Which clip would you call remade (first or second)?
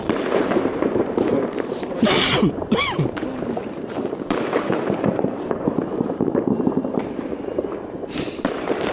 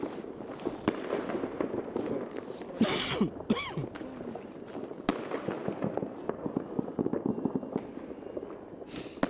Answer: first